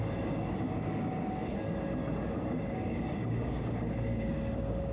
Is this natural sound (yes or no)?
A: no